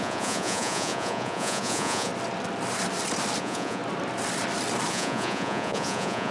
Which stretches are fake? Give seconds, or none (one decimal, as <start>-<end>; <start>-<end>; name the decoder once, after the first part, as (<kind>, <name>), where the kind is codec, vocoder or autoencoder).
0.0-2.1 (vocoder, Vocos); 3.4-3.8; 4.9-6.3